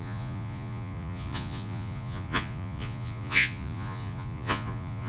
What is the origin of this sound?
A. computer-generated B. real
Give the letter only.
A